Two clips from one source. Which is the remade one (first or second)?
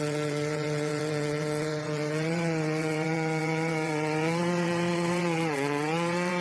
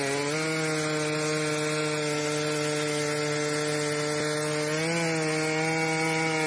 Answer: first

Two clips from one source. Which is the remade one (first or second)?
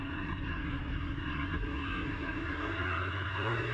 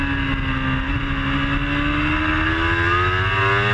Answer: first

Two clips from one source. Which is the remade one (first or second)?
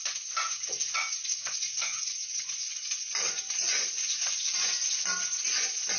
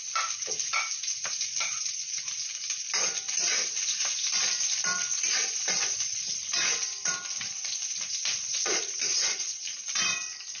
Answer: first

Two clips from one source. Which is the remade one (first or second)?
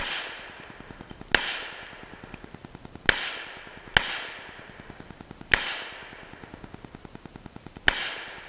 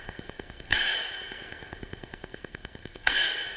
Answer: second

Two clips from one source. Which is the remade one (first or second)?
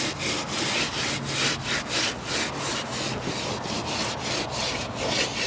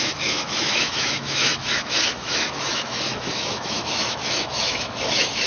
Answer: second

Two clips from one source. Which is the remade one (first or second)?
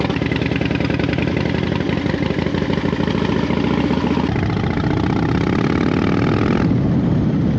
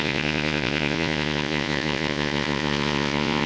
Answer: second